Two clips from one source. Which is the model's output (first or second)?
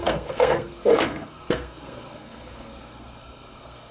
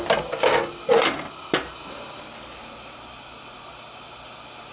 first